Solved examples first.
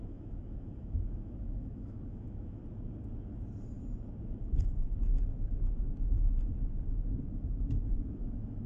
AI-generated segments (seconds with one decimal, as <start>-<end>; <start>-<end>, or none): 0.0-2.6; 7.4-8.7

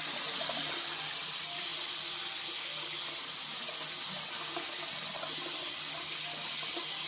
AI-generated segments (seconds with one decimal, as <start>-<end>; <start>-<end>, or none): none

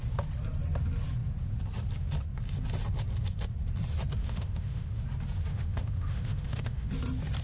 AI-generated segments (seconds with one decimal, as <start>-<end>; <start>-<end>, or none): 4.2-5.0; 5.5-6.9